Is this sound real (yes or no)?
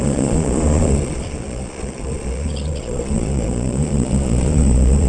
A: no